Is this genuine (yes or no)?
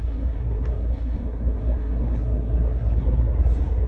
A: no